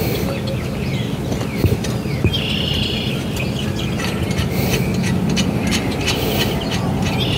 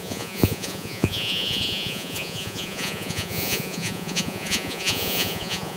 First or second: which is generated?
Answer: second